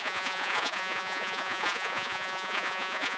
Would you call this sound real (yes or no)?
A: no